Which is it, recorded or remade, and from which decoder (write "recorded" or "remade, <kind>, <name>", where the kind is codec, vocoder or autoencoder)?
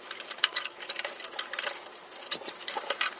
remade, vocoder, BigVGAN v2